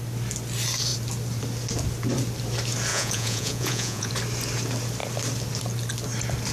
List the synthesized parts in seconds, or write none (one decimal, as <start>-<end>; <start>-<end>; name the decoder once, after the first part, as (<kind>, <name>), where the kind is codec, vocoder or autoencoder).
2.9-4.1 (vocoder, Vocos)